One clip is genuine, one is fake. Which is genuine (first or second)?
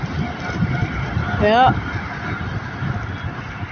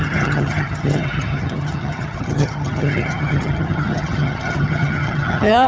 first